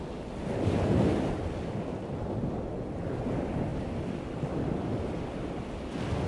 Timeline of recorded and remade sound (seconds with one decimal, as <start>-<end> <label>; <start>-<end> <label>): 0.0-6.3 recorded